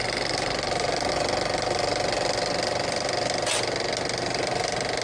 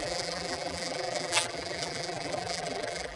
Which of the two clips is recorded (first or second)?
first